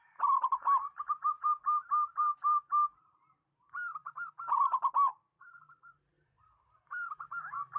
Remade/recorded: remade